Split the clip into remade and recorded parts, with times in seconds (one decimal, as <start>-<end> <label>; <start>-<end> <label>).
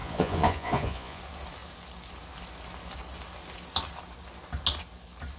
0.0-1.2 remade; 1.2-5.4 recorded